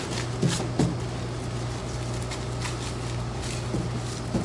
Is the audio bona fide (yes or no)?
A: yes